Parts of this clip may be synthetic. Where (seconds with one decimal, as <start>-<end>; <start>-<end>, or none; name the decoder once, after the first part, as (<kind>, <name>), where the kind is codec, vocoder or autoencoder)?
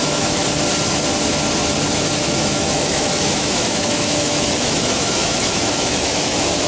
0.0-0.4 (autoencoder, DAC-VAE); 2.2-6.7